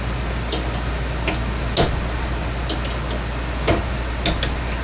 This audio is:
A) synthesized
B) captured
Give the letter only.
B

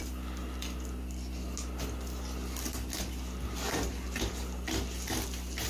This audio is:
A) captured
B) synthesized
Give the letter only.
A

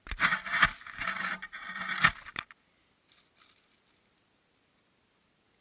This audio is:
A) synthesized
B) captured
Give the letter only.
B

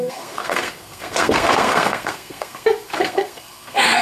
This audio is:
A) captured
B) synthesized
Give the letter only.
B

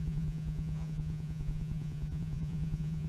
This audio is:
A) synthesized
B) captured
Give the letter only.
A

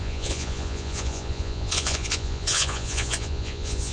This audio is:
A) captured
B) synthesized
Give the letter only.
B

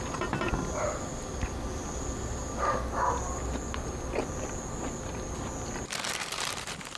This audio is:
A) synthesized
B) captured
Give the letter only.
B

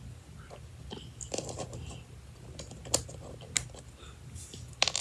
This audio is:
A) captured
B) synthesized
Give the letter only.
A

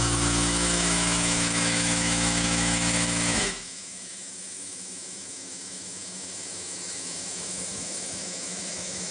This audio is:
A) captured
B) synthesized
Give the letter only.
B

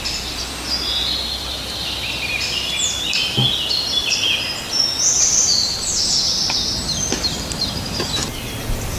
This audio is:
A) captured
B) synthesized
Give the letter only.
A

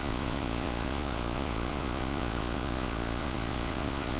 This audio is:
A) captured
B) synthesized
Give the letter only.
B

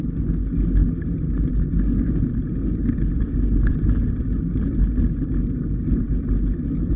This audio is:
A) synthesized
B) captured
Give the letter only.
B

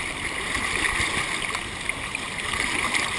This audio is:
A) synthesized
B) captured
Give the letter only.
B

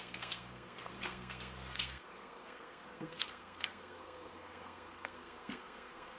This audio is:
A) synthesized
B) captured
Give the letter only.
A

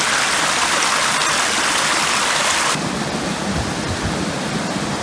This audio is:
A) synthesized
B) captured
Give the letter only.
B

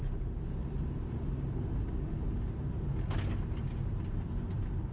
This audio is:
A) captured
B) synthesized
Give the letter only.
A